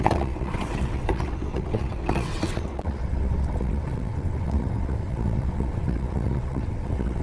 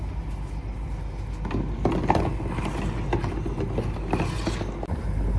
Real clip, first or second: second